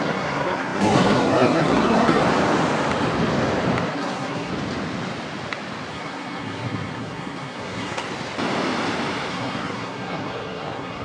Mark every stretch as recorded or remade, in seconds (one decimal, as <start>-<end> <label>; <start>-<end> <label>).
0.0-2.2 remade; 2.2-3.9 recorded; 3.9-4.5 remade; 4.5-5.9 recorded; 5.9-8.0 remade; 8.0-9.3 recorded; 9.3-11.0 remade